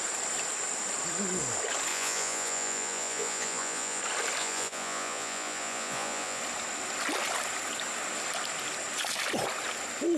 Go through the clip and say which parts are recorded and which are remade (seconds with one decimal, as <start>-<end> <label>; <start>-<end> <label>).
0.0-1.9 recorded; 1.9-4.0 remade; 4.0-4.4 recorded; 4.4-6.4 remade; 6.4-10.2 recorded